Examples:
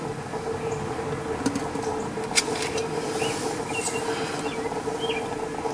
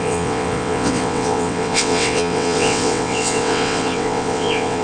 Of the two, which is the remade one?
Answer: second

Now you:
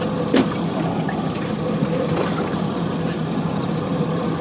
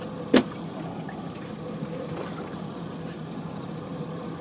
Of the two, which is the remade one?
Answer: first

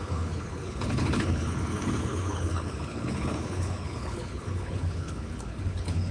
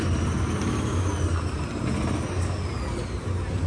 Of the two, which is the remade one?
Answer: first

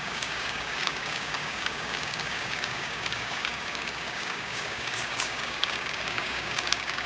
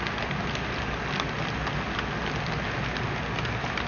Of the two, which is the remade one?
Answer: first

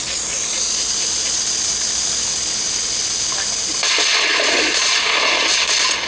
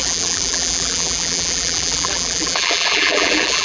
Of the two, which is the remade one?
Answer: second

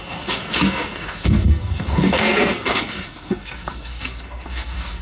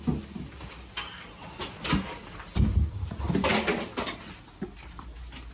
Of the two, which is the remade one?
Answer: first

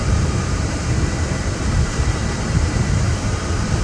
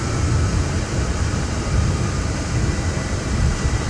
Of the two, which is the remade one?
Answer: first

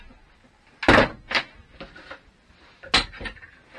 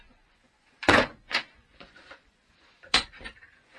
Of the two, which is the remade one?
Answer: second